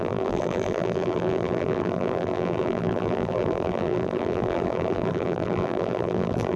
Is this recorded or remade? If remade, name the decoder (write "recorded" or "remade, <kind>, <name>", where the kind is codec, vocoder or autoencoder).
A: remade, vocoder, BigVGAN v2